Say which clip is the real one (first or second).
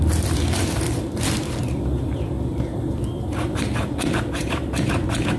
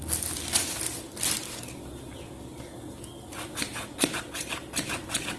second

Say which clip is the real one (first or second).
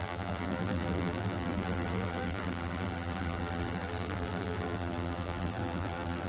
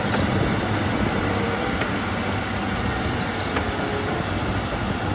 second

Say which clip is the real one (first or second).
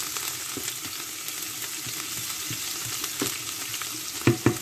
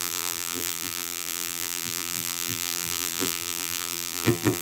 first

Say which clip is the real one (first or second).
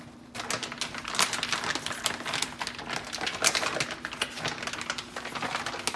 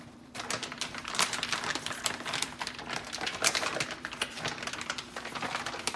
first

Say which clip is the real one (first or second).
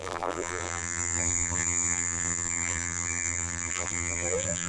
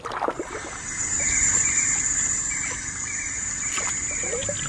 second